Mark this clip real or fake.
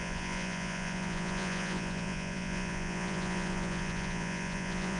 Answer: fake